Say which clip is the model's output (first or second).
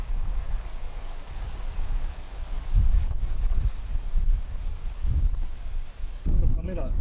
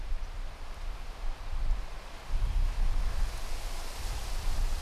first